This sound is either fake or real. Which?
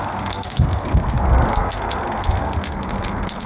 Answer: fake